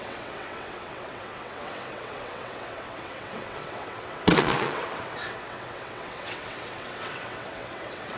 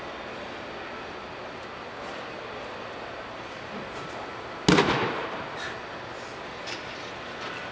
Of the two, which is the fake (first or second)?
first